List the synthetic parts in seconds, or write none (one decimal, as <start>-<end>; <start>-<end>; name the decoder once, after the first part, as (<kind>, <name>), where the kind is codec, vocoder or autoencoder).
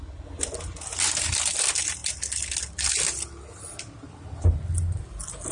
none